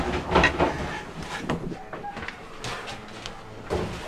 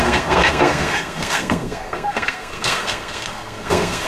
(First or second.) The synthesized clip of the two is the second